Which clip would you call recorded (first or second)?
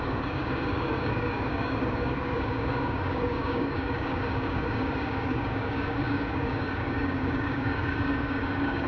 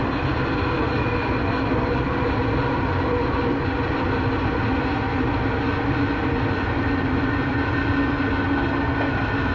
second